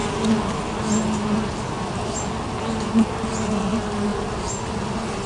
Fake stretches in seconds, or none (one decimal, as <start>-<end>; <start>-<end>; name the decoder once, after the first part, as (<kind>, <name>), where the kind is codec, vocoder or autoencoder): 4.1-5.3 (vocoder, BigVGAN v2)